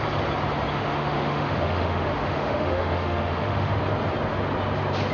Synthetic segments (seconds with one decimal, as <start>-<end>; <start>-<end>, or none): 0.7-3.8